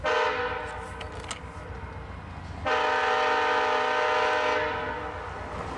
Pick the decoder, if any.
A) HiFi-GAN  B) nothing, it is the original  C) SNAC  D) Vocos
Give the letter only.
B